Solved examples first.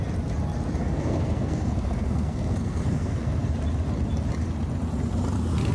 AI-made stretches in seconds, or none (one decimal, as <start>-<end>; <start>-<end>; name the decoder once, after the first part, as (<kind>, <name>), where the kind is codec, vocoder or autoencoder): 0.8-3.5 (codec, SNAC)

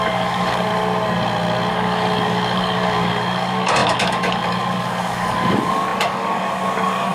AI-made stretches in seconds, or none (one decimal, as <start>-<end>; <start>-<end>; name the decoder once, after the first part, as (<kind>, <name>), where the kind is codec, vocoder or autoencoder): 0.0-0.7 (codec, DAC); 1.7-7.1

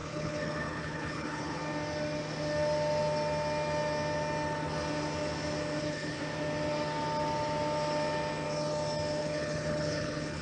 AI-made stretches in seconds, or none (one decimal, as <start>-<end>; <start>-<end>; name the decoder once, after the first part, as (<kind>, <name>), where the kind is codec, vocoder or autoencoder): 0.0-1.6 (codec, HILCodec); 5.8-6.2; 9.2-10.4